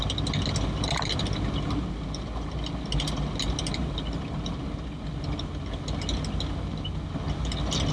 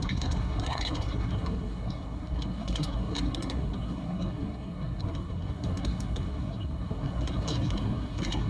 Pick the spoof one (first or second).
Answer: second